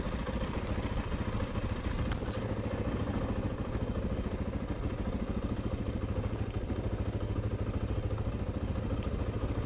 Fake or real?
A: real